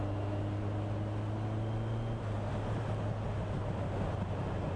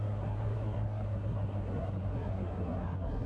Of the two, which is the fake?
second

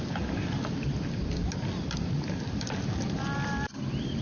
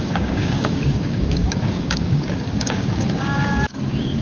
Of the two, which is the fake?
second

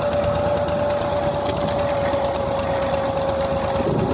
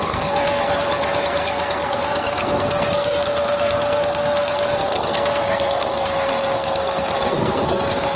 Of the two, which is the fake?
second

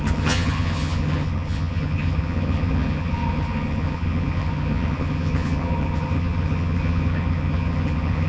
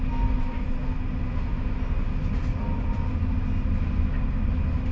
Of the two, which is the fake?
first